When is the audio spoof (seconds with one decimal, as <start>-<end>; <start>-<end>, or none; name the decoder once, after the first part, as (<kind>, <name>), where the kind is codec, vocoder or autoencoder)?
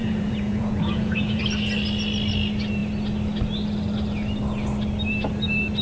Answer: 0.0-1.4 (vocoder, Vocos)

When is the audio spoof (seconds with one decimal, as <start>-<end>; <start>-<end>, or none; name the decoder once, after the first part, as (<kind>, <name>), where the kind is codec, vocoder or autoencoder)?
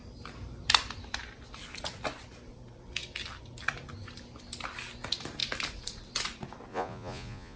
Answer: 6.7-7.6 (vocoder, Vocos)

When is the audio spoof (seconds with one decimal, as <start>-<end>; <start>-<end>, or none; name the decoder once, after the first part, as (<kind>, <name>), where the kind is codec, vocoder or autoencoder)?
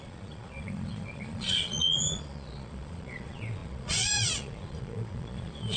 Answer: 0.0-5.8 (vocoder, Vocos)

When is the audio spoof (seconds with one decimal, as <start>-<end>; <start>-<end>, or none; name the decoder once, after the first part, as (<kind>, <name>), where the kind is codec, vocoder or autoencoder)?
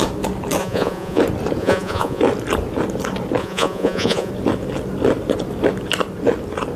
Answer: 0.6-1.2 (vocoder, Vocos); 1.6-2.2; 3.4-4.3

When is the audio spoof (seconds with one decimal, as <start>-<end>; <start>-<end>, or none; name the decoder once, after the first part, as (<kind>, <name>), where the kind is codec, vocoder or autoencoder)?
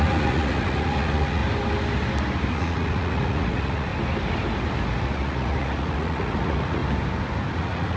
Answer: 0.0-1.4 (vocoder, Vocos); 2.5-3.9; 5.0-6.8; 7.5-8.0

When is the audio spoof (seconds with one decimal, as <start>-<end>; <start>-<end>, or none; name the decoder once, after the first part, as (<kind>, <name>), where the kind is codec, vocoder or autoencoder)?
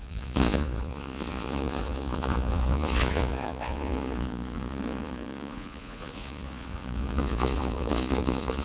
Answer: 0.0-8.6 (vocoder, Vocos)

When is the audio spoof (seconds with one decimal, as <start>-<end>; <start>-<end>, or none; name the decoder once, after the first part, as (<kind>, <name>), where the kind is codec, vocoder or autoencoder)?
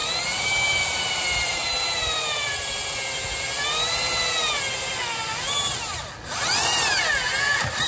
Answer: none